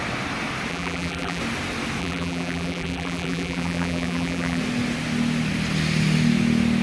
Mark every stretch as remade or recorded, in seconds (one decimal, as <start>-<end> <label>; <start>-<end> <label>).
0.0-0.7 recorded; 0.7-1.4 remade; 1.4-2.0 recorded; 2.0-4.6 remade; 4.6-6.8 recorded